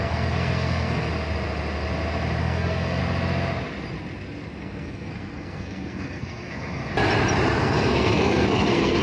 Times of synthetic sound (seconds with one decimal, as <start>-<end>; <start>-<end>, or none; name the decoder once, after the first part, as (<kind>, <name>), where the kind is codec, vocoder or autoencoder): 0.0-1.1 (codec, SNAC); 2.4-3.0; 4.6-6.8; 7.6-9.0